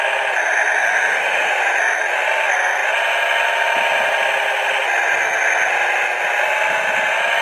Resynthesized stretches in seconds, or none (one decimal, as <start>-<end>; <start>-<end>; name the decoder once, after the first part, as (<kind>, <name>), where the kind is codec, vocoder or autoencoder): 0.8-1.5 (autoencoder, DAC-VAE)

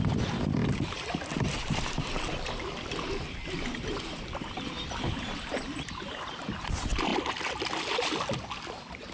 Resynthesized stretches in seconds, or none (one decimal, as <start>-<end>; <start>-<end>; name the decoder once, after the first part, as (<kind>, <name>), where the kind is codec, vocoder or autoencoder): none

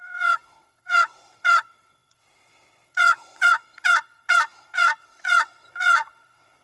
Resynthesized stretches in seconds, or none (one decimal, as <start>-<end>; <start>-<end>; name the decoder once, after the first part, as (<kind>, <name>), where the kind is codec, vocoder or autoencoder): 0.0-6.6 (vocoder, WaveNeXt)